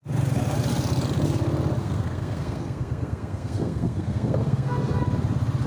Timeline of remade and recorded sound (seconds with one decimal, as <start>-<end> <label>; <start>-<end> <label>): 0.0-1.8 recorded; 1.8-5.0 remade; 5.0-5.7 recorded